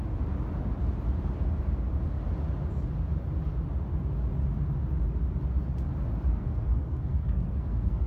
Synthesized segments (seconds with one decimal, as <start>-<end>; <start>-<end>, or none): 6.3-8.1

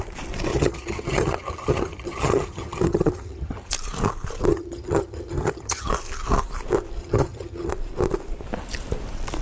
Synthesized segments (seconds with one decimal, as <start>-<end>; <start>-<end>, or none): 0.5-3.7; 4.5-5.9; 7.0-7.7

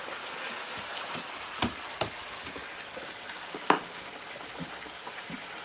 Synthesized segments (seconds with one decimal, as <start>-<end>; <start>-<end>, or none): 3.4-4.1